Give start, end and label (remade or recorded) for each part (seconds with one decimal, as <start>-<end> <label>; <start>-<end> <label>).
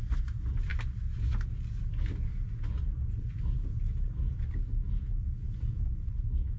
0.0-6.6 recorded